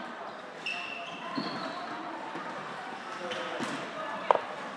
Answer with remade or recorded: recorded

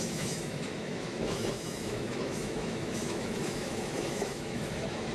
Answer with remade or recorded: remade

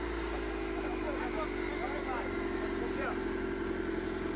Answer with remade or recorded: recorded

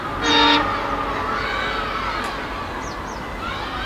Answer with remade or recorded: recorded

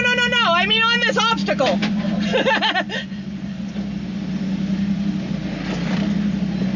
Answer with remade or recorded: recorded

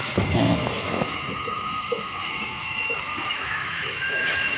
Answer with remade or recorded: remade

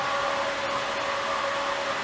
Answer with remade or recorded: recorded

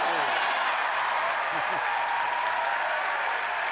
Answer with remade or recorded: recorded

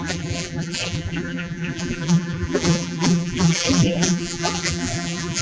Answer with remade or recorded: remade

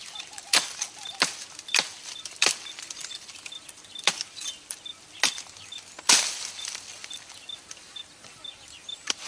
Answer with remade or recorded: recorded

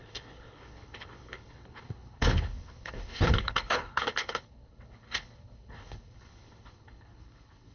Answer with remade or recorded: remade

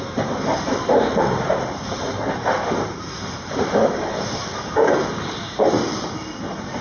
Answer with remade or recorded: remade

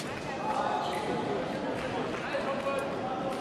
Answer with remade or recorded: recorded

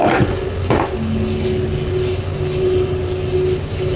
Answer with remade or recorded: recorded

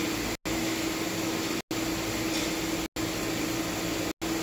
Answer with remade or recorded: recorded